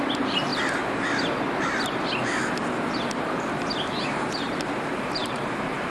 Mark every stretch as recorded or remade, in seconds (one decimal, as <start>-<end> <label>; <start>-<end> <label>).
0.0-0.5 remade; 0.5-4.0 recorded; 4.0-5.9 remade